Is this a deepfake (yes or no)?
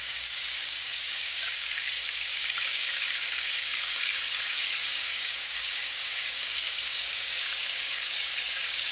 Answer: yes